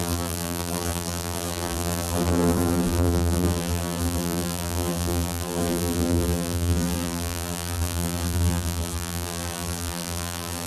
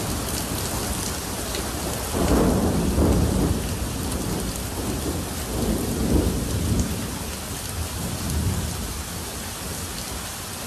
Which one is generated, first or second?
first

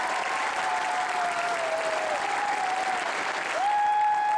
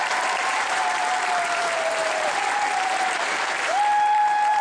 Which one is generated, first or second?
second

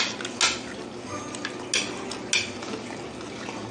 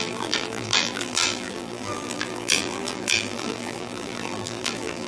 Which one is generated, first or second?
second